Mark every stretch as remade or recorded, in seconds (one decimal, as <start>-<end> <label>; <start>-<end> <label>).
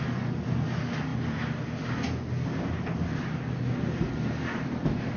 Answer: 0.0-5.2 recorded